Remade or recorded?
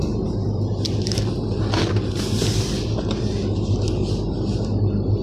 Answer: recorded